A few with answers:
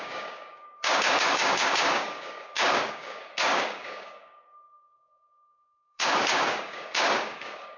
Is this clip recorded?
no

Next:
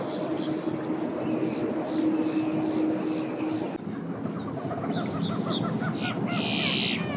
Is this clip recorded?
yes